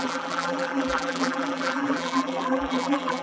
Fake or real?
fake